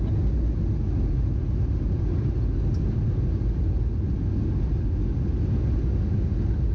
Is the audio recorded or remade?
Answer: recorded